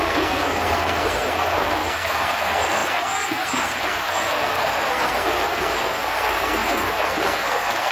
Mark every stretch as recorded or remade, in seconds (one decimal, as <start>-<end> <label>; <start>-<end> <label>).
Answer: 0.0-7.9 remade